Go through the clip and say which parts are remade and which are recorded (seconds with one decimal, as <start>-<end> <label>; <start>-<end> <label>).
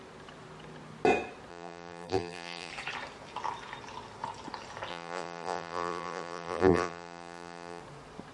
0.0-1.5 recorded; 1.5-2.7 remade; 2.7-4.9 recorded; 4.9-7.8 remade; 7.8-8.3 recorded